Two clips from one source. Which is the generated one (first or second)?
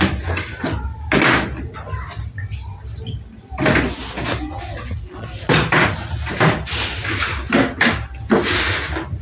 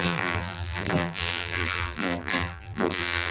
second